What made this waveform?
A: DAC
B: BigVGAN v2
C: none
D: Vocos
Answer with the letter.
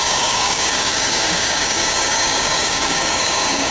A